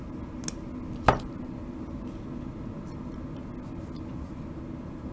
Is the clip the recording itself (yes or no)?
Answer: yes